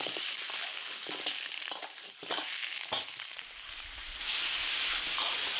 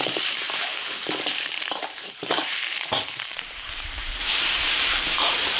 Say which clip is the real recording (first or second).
first